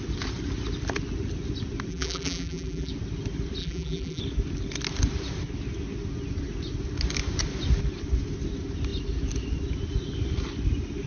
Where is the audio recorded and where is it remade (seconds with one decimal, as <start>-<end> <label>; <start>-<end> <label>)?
0.0-1.9 recorded; 1.9-2.9 remade; 2.9-3.6 recorded; 3.6-4.2 remade; 4.2-11.1 recorded